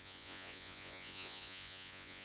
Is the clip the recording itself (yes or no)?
no